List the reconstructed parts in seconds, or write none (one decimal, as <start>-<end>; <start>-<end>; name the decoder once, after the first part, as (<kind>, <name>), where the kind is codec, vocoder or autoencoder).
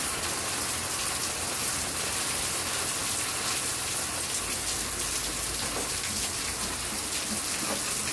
none